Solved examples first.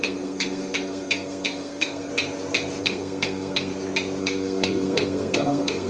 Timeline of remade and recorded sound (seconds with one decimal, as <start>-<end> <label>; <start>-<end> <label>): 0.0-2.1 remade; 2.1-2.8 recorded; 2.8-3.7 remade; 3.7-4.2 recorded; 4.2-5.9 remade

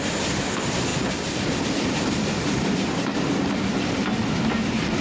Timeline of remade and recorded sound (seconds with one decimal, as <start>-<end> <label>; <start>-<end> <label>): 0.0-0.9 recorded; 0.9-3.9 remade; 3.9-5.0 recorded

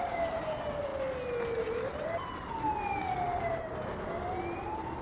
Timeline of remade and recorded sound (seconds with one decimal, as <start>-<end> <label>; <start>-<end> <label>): 0.0-5.0 recorded

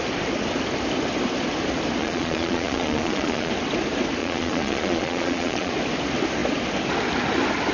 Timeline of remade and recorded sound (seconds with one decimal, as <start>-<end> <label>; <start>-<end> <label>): 0.0-2.0 recorded; 2.0-3.5 remade; 3.5-4.2 recorded; 4.2-5.7 remade; 5.7-7.7 recorded

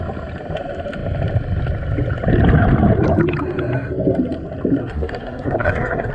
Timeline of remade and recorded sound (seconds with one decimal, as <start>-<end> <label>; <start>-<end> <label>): 0.0-4.8 recorded; 4.8-6.1 remade

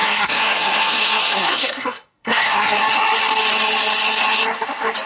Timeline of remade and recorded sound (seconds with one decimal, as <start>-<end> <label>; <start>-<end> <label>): 0.0-2.8 remade; 2.8-5.1 recorded

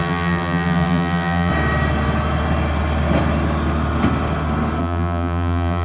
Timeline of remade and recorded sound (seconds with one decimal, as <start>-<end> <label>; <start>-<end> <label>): 0.0-1.5 remade; 1.5-4.8 recorded; 4.8-5.8 remade